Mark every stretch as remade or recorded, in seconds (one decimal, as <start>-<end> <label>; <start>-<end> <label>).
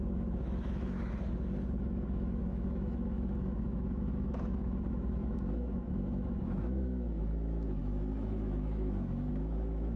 0.0-10.0 remade